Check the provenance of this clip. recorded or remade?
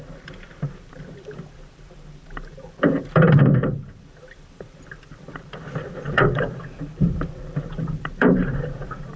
remade